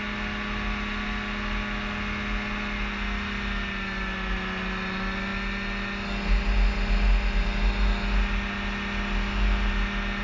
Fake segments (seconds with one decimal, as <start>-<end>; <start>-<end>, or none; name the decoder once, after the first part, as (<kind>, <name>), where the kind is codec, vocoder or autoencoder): none